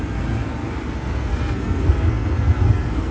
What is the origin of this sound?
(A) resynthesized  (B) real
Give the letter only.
A